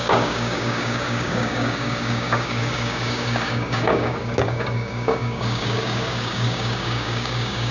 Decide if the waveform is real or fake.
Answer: fake